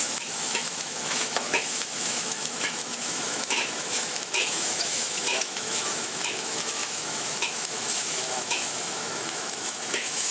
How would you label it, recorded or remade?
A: remade